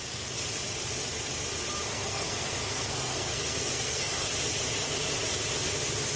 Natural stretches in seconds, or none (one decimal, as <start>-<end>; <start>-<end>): 0.0-1.9; 4.3-6.2